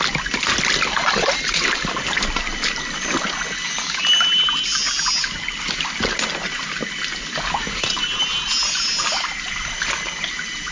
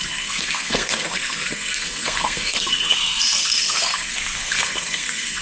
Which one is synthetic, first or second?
second